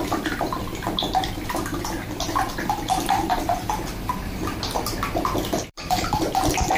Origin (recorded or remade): remade